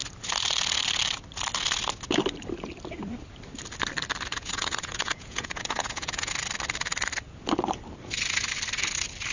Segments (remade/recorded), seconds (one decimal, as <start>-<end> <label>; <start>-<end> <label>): 0.0-4.3 recorded; 4.3-6.3 remade; 6.3-9.3 recorded